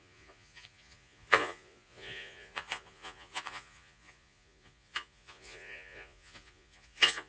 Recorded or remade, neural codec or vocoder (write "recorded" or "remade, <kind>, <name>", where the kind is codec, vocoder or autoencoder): remade, vocoder, Vocos